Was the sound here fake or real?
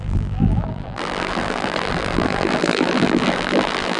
fake